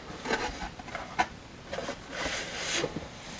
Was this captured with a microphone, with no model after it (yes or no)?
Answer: yes